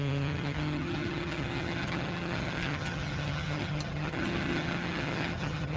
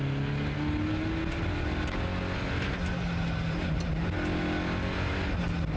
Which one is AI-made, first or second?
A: first